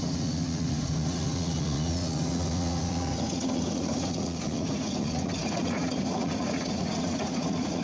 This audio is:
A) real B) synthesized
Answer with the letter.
B